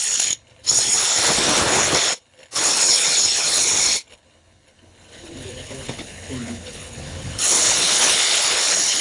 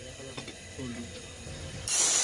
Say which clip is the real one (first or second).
second